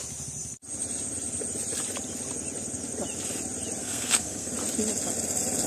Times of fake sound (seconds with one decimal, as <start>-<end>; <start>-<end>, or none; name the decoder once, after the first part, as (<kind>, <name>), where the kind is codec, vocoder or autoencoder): 3.8-4.5 (codec, SNAC)